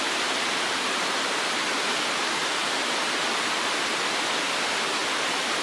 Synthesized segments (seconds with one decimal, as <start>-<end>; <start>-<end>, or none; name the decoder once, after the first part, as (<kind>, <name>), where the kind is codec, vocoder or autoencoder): none